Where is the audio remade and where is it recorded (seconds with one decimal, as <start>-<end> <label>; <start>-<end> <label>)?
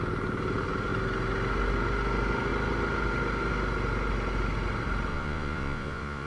0.0-5.1 recorded; 5.1-6.3 remade